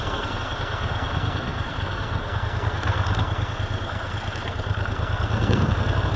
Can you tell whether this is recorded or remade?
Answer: remade